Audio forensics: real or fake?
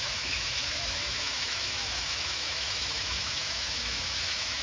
fake